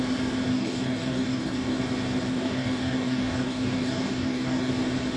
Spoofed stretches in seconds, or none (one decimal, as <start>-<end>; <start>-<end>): 0.5-1.8; 2.3-4.7